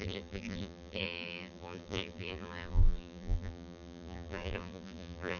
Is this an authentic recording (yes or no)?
no